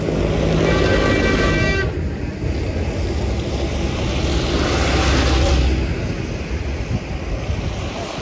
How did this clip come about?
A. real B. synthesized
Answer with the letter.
A